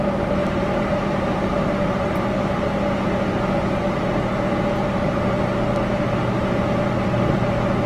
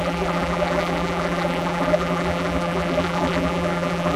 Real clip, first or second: first